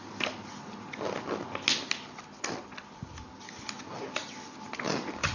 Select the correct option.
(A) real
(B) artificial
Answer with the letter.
A